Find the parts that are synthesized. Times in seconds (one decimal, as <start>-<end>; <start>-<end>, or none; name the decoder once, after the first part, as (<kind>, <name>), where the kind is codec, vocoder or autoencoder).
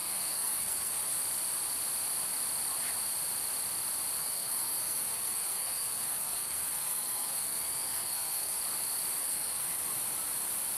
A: 0.0-1.2 (codec, SNAC); 4.2-8.6; 9.2-9.7